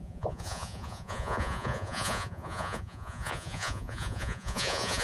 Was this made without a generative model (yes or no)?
no